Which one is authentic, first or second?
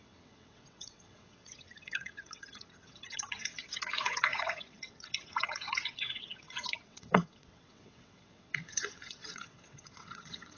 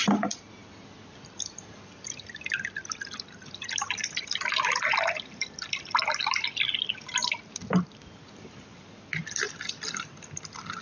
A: second